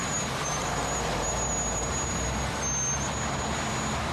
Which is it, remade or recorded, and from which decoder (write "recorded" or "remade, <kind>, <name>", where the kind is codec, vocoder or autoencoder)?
recorded